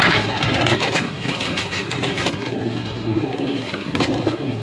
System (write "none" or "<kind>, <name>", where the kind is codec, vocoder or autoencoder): codec, SNAC